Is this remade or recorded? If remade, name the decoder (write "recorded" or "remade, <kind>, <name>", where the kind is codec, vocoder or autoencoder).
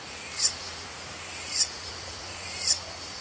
remade, vocoder, Vocos